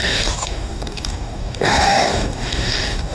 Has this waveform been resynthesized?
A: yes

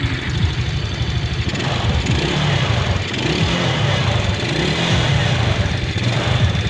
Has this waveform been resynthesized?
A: yes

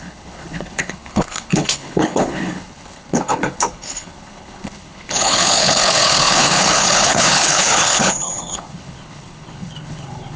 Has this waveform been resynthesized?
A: yes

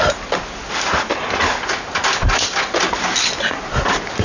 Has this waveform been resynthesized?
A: no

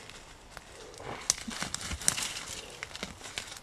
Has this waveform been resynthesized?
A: no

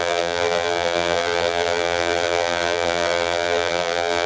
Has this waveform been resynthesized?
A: yes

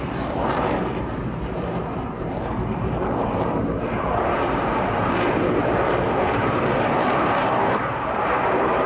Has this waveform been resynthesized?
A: yes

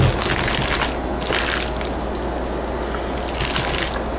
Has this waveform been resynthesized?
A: no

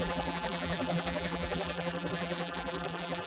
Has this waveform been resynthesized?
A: yes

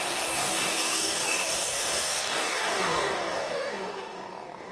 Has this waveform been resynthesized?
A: yes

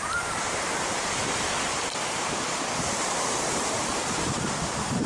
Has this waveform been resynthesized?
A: yes